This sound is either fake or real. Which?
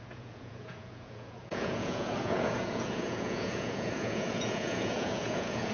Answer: fake